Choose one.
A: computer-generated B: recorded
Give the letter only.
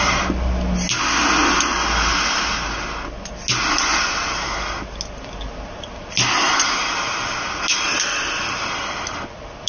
B